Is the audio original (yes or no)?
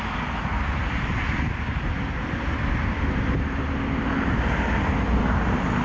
yes